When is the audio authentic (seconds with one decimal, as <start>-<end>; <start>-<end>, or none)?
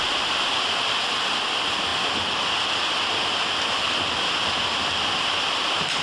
0.0-6.0